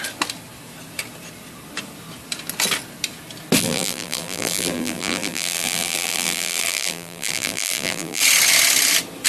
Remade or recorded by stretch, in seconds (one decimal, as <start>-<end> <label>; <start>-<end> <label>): 0.0-3.6 recorded; 3.6-8.2 remade; 8.2-9.3 recorded